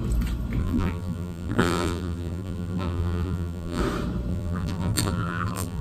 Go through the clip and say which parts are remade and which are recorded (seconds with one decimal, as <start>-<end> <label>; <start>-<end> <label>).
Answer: 0.0-0.6 recorded; 0.6-3.8 remade; 3.8-4.3 recorded; 4.3-5.8 remade